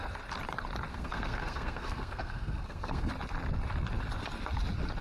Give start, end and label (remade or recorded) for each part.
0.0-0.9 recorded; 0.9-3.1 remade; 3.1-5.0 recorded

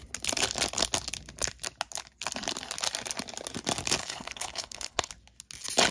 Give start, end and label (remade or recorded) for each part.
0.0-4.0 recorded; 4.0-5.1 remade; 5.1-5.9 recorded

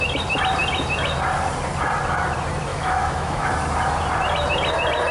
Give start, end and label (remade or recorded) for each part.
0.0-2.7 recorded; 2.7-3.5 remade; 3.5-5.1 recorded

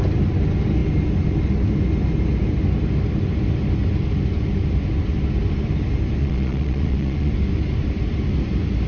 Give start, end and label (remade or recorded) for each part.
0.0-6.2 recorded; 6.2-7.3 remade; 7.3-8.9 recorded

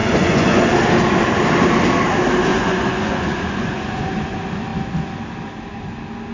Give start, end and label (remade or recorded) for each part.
0.0-0.6 remade; 0.6-2.5 recorded; 2.5-4.1 remade; 4.1-6.3 recorded

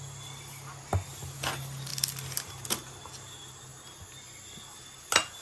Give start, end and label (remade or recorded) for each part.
0.0-5.4 recorded

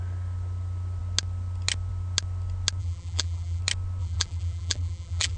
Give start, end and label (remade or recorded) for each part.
0.0-2.8 recorded; 2.8-3.6 remade; 3.6-4.0 recorded; 4.0-5.4 remade